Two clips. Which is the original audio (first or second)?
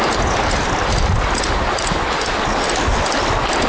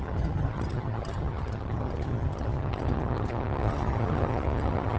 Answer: first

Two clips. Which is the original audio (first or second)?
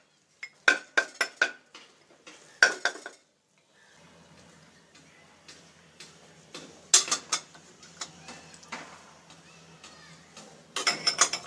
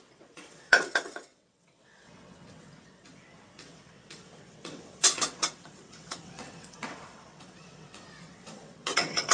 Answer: first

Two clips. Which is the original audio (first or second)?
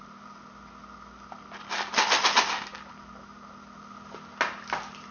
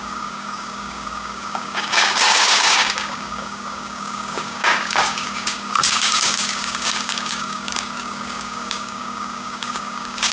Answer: first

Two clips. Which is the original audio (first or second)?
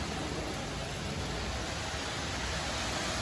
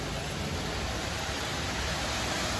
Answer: first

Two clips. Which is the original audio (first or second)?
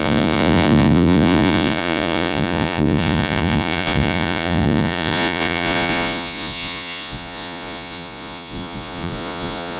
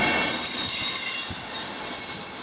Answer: second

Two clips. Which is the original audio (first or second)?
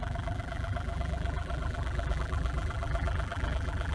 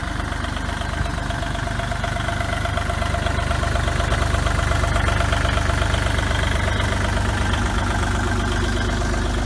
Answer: second